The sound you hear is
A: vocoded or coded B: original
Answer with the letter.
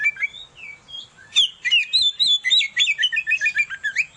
B